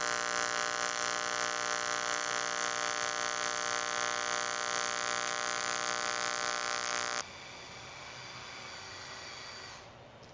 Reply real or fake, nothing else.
real